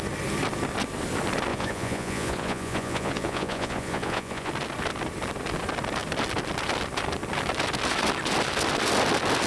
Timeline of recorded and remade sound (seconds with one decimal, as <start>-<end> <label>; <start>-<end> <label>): 0.0-1.5 recorded; 1.5-4.5 remade; 4.5-9.5 recorded